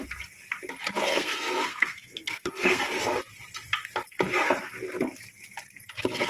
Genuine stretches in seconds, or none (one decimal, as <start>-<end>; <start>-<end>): 0.0-1.1; 2.8-6.3

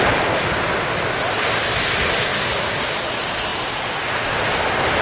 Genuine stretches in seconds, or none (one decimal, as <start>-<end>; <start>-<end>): 0.0-5.0

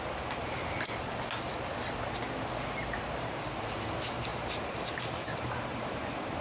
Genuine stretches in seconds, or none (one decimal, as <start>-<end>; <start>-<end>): 0.0-4.3

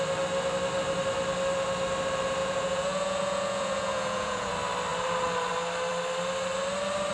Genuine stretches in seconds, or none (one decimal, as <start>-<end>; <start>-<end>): 0.0-2.4; 4.5-7.1

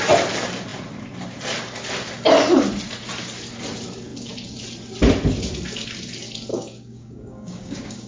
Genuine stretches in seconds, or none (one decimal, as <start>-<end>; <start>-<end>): 0.0-6.5

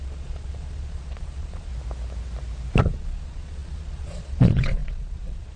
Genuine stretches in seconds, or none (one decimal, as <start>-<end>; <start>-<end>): 1.7-2.8

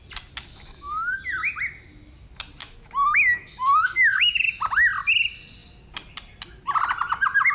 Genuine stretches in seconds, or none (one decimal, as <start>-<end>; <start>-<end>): 0.0-0.5; 1.2-2.6; 4.6-7.5